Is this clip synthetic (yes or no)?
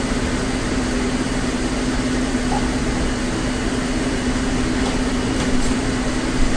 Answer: no